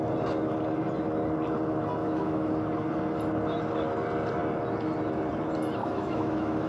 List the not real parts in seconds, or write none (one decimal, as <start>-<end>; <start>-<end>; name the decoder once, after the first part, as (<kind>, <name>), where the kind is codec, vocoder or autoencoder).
2.0-2.5 (autoencoder, DAC-VAE); 5.8-6.7